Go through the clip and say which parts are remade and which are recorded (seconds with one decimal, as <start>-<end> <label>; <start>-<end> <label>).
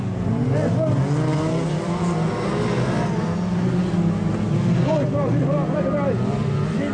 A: 0.0-6.9 recorded